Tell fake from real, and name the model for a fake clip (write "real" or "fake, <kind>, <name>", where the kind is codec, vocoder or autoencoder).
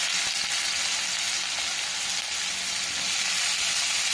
real